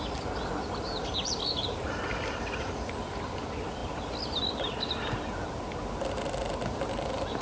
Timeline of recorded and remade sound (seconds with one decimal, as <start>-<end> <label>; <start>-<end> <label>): 0.0-7.4 recorded